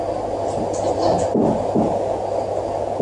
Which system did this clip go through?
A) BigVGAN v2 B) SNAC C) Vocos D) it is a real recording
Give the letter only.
D